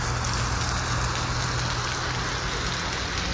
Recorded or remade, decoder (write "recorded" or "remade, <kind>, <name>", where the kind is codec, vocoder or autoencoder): recorded